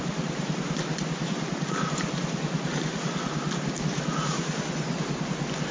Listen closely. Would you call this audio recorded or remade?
recorded